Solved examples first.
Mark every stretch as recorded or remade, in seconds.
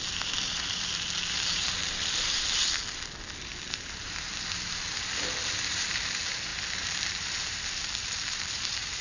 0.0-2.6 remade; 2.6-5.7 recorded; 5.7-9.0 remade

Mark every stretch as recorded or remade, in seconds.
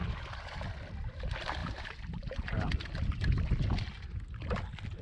0.0-1.6 recorded; 1.6-2.7 remade; 2.7-5.0 recorded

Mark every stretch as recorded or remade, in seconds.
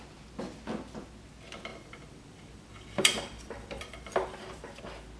0.0-1.7 recorded; 1.7-4.8 remade; 4.8-5.2 recorded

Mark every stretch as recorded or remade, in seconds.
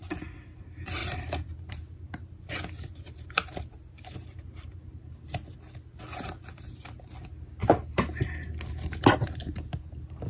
0.0-1.0 recorded; 1.0-6.0 remade; 6.0-7.6 recorded; 7.6-8.5 remade; 8.5-10.3 recorded